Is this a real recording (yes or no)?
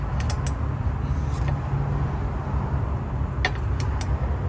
yes